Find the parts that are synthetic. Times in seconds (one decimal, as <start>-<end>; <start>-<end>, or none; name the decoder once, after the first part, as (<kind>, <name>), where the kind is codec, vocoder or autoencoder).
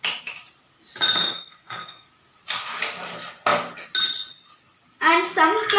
1.2-2.1 (codec, SNAC)